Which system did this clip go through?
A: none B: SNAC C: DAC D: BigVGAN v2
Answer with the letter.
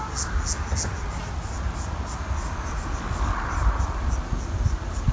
A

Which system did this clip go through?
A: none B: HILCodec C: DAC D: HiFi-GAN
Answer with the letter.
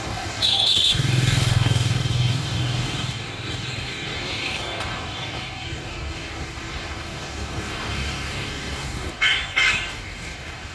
C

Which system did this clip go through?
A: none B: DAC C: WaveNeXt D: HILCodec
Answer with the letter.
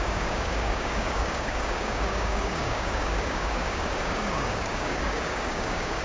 B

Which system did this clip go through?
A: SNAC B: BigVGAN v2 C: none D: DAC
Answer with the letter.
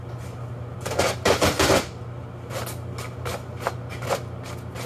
C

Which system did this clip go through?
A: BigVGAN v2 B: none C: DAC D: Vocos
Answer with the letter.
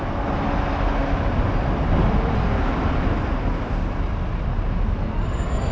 B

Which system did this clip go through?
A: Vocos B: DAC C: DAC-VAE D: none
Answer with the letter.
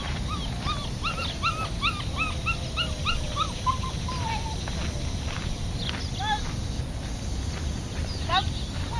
D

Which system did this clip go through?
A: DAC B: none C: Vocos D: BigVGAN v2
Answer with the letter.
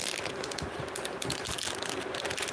B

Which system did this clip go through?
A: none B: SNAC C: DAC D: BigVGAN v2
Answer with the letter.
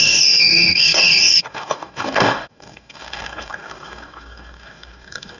C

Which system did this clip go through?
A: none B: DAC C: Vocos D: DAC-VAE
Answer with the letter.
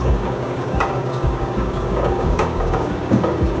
B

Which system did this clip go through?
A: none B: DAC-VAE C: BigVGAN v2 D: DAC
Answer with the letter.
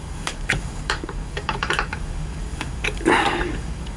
D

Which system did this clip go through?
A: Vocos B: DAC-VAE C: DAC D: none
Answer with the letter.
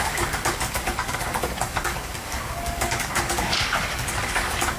C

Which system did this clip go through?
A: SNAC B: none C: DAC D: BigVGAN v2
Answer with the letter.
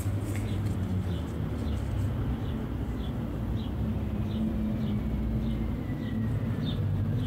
B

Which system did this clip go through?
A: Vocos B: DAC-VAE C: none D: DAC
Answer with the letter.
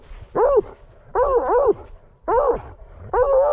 C